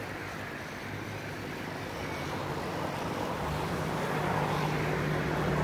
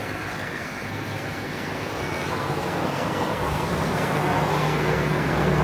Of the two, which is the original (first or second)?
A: first